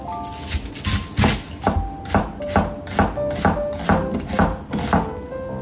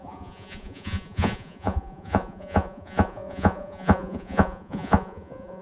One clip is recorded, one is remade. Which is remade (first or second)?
second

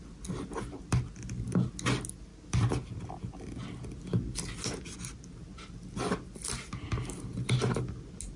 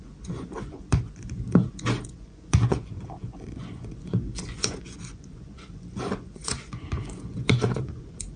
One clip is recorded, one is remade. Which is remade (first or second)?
second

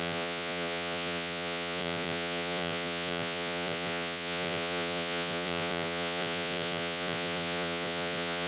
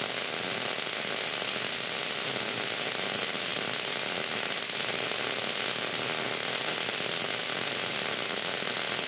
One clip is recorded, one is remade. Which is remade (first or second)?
first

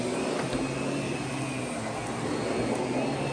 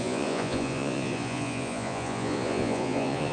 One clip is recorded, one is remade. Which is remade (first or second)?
second